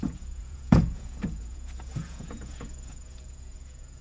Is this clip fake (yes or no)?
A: yes